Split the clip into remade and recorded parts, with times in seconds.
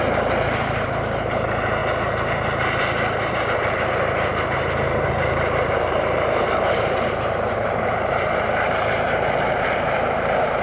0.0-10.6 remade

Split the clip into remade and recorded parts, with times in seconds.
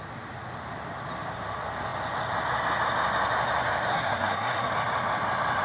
0.0-3.9 recorded; 3.9-4.7 remade; 4.7-5.6 recorded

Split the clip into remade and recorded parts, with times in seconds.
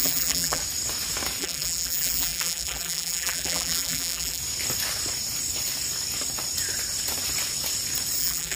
0.0-0.6 remade; 0.6-1.4 recorded; 1.4-4.4 remade; 4.4-8.2 recorded; 8.2-8.6 remade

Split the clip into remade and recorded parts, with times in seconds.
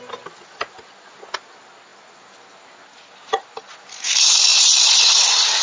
0.0-5.6 recorded